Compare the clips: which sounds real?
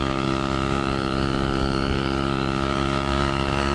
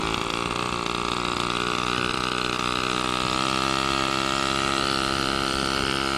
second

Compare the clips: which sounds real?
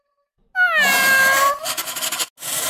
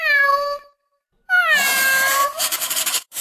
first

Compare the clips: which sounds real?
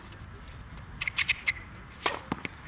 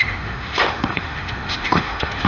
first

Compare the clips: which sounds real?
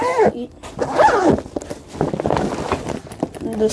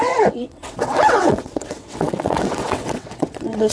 first